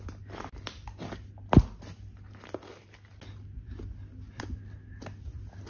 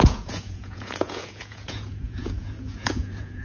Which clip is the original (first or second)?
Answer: first